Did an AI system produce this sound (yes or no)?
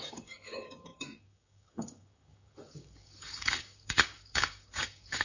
yes